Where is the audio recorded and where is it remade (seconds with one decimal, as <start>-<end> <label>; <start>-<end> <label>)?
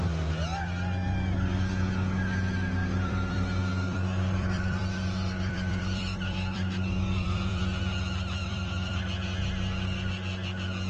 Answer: 0.0-2.8 recorded; 2.8-7.6 remade; 7.6-8.4 recorded; 8.4-9.0 remade; 9.0-10.9 recorded